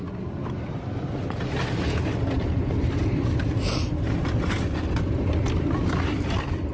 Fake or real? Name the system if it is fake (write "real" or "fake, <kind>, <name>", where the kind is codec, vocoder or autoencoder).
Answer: real